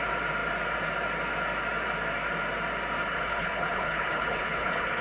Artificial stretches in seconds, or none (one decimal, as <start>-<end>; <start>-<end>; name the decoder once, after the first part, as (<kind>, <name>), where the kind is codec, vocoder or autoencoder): 3.0-5.0 (codec, HILCodec)